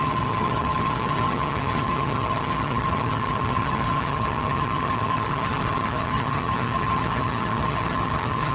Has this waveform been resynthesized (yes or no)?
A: yes